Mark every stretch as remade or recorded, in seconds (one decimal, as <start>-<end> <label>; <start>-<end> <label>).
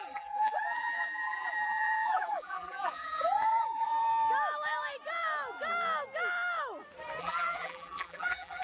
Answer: 0.0-3.9 remade; 3.9-7.2 recorded; 7.2-8.6 remade